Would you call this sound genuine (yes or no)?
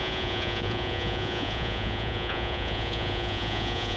no